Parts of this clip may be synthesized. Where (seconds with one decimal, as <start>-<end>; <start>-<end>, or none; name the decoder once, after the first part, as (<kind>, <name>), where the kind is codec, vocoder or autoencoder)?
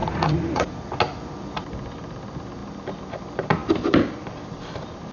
0.0-0.7 (vocoder, Vocos)